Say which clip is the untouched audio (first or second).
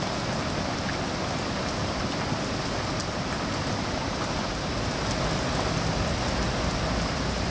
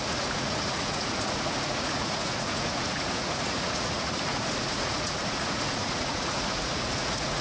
first